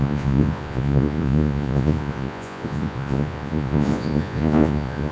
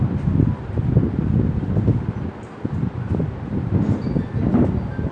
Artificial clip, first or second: first